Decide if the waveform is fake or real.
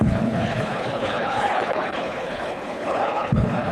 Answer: fake